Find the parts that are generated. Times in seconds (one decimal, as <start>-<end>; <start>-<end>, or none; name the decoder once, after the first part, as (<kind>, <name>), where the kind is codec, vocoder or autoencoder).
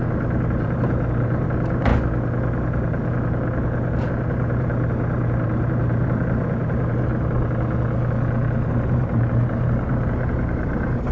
0.0-1.9 (vocoder, BigVGAN v2); 4.1-7.1; 8.7-11.1